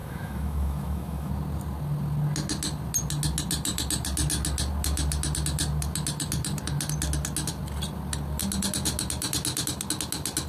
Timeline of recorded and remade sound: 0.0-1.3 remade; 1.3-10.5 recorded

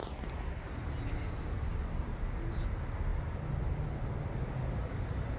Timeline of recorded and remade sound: 0.0-5.4 recorded

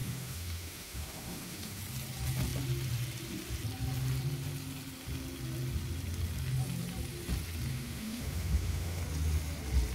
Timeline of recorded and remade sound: 0.0-1.8 remade; 1.8-7.7 recorded; 7.7-9.0 remade; 9.0-9.9 recorded

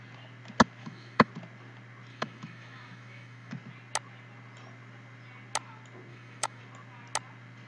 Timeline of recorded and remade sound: 0.0-0.8 recorded; 0.8-1.3 remade; 1.3-2.1 recorded; 2.1-3.5 remade; 3.5-6.1 recorded; 6.1-6.6 remade; 6.6-7.7 recorded

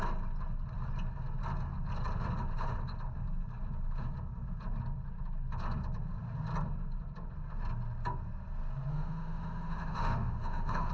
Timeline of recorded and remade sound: 0.0-8.9 recorded; 8.9-10.9 remade